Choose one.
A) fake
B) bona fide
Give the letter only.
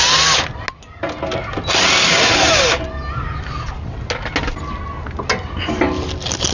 B